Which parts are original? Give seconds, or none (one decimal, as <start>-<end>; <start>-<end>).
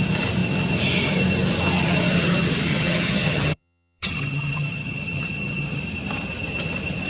0.0-2.7; 5.8-7.1